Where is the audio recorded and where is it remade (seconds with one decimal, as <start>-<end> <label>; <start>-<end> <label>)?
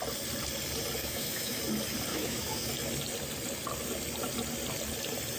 0.0-1.0 recorded; 1.0-1.6 remade; 1.6-2.1 recorded; 2.1-2.7 remade; 2.7-5.4 recorded